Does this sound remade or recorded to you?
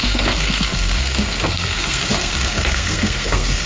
remade